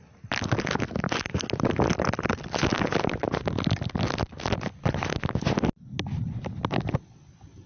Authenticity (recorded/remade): recorded